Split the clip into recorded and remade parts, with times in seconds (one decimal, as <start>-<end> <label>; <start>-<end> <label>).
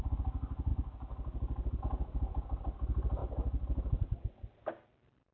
0.0-5.3 recorded